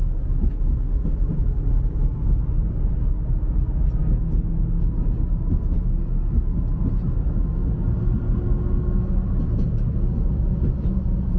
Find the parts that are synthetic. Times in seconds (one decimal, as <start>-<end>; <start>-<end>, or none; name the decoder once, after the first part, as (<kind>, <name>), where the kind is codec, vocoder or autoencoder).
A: none